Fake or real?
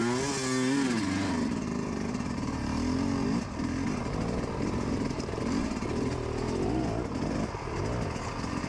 real